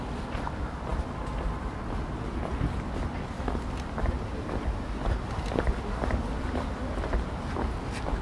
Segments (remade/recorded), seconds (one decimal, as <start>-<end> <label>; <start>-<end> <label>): 0.0-8.2 recorded